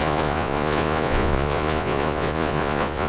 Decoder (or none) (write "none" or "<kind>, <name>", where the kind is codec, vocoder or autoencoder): vocoder, Vocos